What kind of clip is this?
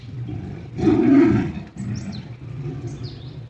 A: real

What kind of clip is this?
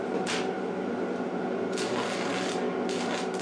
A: real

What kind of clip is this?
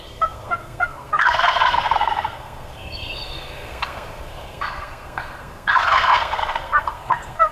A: fake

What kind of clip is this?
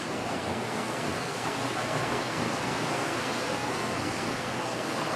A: fake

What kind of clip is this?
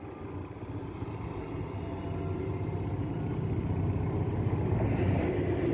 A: real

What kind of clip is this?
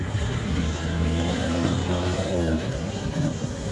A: fake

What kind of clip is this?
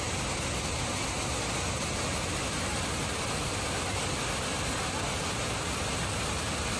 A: real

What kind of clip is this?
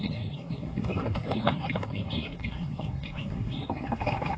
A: fake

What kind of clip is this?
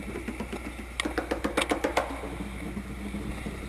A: real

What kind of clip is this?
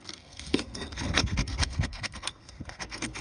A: fake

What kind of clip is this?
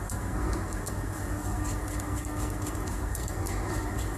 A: fake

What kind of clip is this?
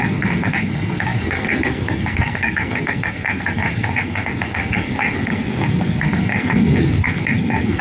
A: fake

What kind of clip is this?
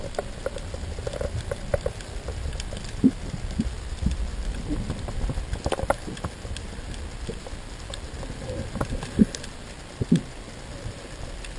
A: real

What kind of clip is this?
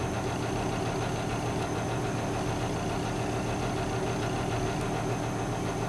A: real